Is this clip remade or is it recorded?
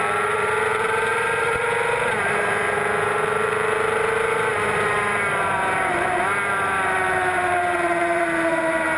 remade